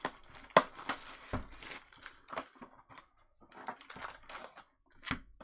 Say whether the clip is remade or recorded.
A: recorded